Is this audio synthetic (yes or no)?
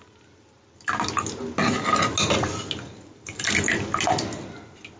no